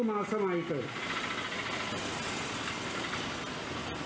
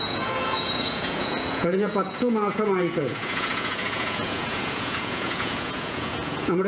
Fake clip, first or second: second